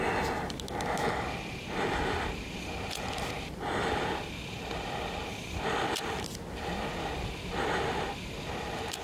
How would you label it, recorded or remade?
recorded